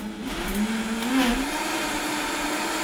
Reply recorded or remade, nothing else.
recorded